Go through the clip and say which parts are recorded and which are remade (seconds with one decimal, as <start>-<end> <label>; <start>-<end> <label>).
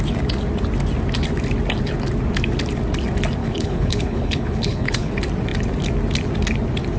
0.0-3.4 recorded; 3.4-5.1 remade; 5.1-7.0 recorded